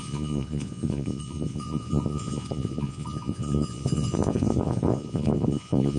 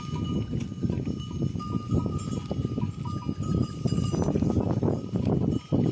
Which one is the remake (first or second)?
first